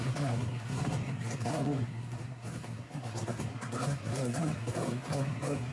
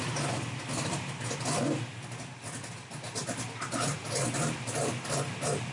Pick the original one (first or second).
second